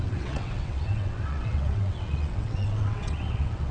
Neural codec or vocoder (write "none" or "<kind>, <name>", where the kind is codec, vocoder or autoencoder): vocoder, WaveNeXt